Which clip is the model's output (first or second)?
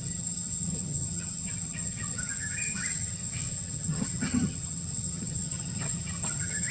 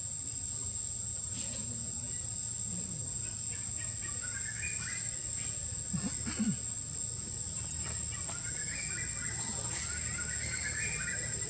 first